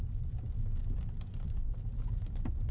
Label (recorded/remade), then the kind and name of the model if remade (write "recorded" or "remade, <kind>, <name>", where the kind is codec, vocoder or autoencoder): recorded